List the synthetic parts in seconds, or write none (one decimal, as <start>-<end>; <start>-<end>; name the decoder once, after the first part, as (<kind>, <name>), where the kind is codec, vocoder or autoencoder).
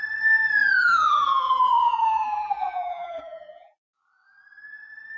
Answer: 0.8-3.9 (vocoder, BigVGAN v2)